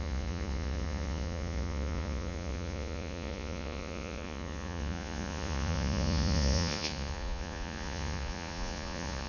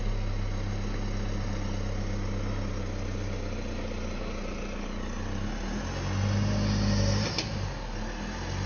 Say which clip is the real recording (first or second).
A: second